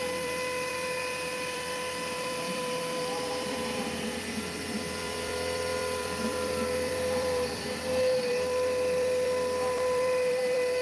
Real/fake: fake